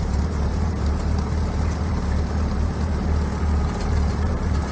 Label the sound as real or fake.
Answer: fake